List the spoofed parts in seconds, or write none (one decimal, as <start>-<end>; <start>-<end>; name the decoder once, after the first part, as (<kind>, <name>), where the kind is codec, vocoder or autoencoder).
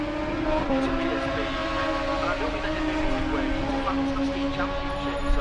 none